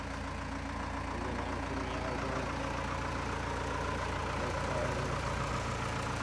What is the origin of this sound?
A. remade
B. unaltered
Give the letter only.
B